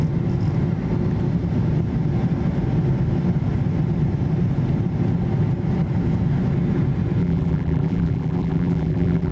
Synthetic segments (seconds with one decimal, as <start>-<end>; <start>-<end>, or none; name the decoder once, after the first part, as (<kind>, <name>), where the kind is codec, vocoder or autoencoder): 7.2-9.3 (vocoder, BigVGAN v2)